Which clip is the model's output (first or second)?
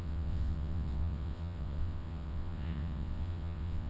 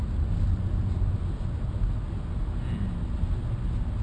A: first